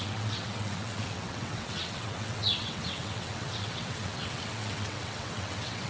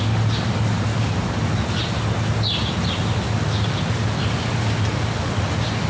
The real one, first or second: second